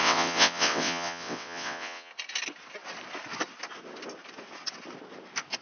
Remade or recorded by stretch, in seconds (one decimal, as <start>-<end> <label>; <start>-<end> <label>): 0.0-2.1 remade; 2.1-5.6 recorded